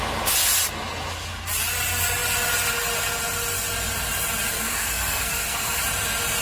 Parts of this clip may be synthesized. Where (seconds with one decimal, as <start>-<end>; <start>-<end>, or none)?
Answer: 4.5-5.8